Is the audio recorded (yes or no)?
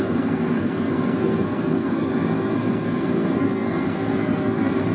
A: no